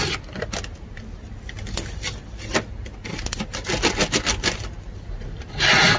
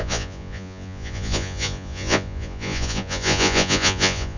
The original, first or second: first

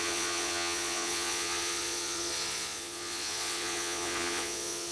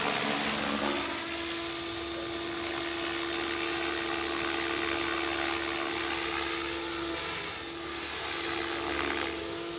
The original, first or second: second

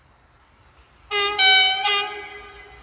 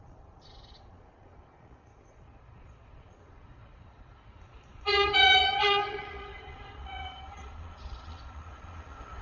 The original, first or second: first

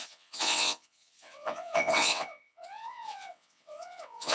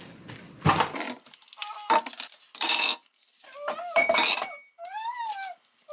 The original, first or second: second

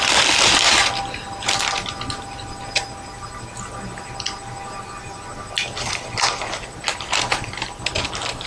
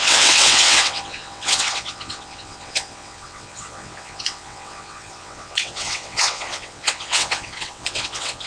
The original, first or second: first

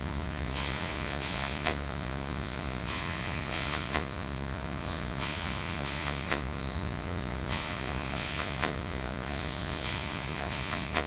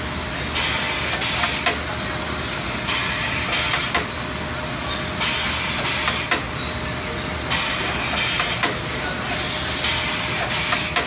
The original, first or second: second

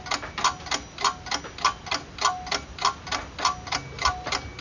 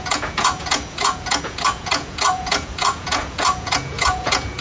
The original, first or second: first